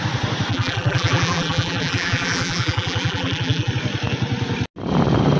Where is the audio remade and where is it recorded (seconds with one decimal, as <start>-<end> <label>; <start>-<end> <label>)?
0.0-0.5 recorded; 0.5-3.7 remade; 3.7-5.4 recorded